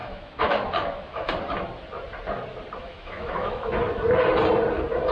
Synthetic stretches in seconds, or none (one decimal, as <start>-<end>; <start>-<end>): 0.0-1.3; 2.8-3.7